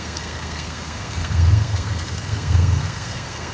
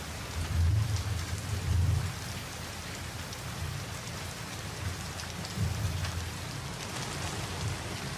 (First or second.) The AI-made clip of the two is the first